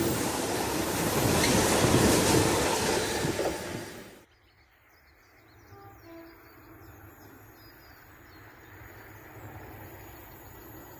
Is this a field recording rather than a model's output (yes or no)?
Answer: yes